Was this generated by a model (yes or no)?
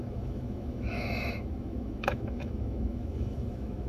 yes